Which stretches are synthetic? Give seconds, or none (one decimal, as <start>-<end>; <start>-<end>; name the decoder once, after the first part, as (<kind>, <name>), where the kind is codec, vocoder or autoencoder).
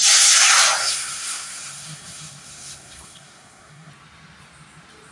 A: 0.8-3.9 (codec, SNAC)